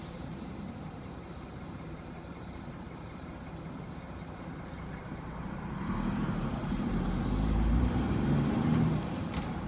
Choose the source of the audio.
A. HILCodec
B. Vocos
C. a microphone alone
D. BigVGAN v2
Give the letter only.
D